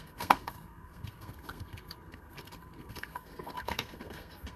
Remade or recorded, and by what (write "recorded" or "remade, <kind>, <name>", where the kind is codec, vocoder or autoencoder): remade, codec, SNAC